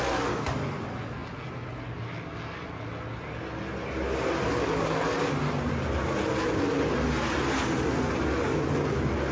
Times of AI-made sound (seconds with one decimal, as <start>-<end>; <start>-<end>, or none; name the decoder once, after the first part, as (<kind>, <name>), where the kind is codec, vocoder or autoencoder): none